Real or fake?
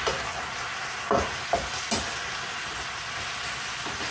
real